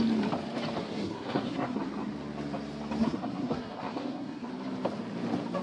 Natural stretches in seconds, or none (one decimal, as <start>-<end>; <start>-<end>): 0.0-0.8; 1.8-3.0; 4.5-5.6